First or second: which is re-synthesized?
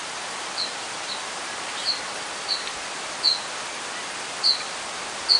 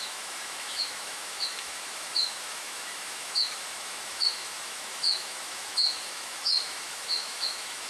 second